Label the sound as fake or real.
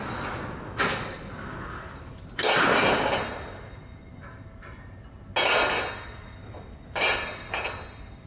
real